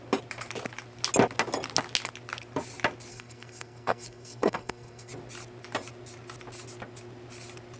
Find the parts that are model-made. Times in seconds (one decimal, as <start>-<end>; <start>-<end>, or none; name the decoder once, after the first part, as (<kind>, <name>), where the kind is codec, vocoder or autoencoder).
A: 3.1-5.1 (codec, SNAC)